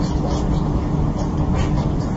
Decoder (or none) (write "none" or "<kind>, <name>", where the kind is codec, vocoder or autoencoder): none